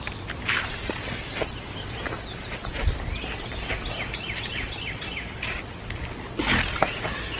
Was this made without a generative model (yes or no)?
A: yes